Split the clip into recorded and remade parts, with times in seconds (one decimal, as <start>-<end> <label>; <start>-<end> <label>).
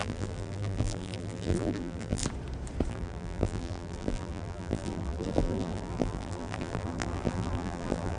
0.0-2.2 remade; 2.2-2.9 recorded; 2.9-8.2 remade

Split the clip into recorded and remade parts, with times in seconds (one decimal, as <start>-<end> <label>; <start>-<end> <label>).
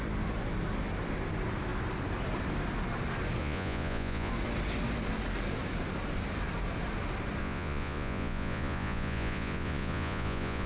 0.0-3.4 recorded; 3.4-4.3 remade; 4.3-7.4 recorded; 7.4-10.7 remade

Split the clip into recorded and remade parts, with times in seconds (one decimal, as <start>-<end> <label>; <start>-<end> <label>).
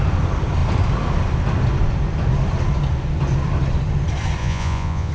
0.0-4.4 recorded; 4.4-5.1 remade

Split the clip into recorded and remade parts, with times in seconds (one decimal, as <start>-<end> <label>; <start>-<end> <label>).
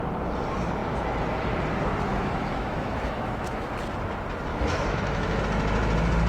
0.0-2.1 recorded; 2.1-3.7 remade; 3.7-4.5 recorded; 4.5-5.4 remade; 5.4-6.3 recorded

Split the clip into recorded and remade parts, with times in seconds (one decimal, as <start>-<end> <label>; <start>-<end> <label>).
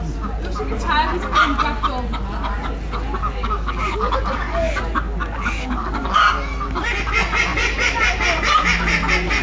0.0-3.2 recorded; 3.2-6.2 remade; 6.2-9.4 recorded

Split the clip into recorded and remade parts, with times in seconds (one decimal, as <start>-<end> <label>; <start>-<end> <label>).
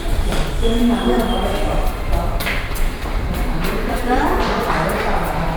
0.0-0.8 recorded; 0.8-4.2 remade; 4.2-5.6 recorded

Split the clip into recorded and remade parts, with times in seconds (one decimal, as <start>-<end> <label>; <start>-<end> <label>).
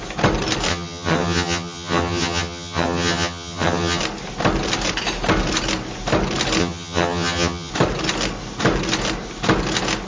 0.0-0.7 recorded; 0.7-4.0 remade; 4.0-6.6 recorded; 6.6-7.7 remade; 7.7-10.1 recorded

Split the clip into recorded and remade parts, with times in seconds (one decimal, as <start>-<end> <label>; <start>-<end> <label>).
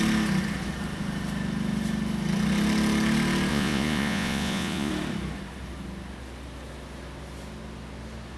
0.0-3.5 recorded; 3.5-4.9 remade; 4.9-8.4 recorded